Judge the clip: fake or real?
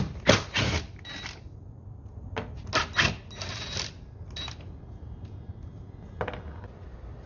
real